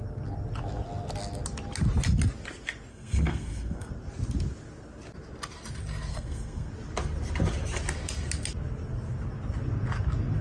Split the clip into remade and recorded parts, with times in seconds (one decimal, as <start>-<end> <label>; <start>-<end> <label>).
0.0-2.9 recorded; 2.9-3.9 remade; 3.9-6.1 recorded; 6.1-6.7 remade; 6.7-10.4 recorded